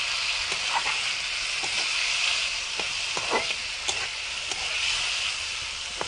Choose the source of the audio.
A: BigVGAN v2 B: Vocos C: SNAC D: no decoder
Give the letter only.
D